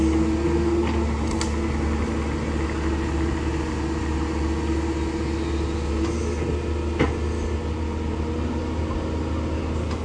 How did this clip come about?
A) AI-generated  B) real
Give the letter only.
B